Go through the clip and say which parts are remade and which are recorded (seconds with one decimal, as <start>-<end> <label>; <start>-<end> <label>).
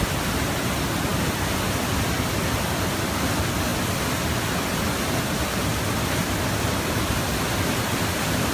0.0-8.5 recorded